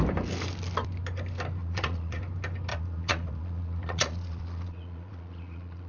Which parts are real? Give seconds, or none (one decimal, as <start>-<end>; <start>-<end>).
0.0-1.6; 2.2-2.7